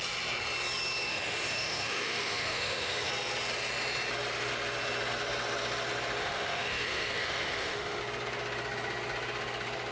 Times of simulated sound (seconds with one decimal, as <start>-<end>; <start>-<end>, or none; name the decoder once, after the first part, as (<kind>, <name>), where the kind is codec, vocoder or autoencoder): 1.1-3.1 (autoencoder, DAC-VAE); 6.2-8.0